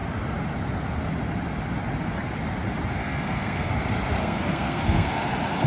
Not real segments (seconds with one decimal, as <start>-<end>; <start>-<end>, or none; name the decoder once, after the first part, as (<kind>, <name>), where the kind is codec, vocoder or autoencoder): 3.0-3.7 (codec, SNAC); 4.2-5.3